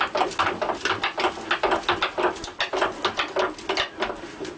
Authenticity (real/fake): real